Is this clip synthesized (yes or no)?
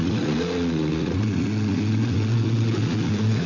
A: yes